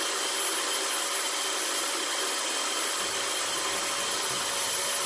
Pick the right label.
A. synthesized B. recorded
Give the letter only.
B